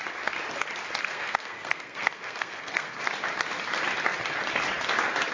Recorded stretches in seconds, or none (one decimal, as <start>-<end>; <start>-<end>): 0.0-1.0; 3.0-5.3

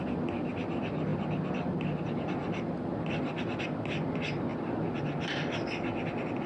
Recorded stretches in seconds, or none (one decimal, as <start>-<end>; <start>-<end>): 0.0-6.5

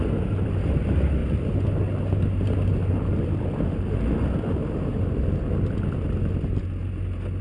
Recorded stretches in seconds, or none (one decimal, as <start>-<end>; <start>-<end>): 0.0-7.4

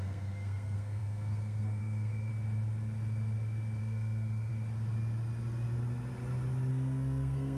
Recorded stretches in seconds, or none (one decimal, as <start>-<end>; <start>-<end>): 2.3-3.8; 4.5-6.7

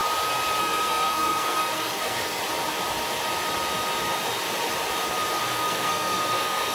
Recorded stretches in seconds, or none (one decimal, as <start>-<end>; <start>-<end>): 0.0-0.6; 2.4-5.4

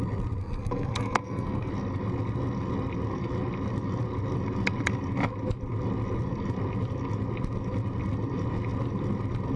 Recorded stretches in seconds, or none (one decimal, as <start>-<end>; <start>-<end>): 0.0-0.4; 1.7-9.6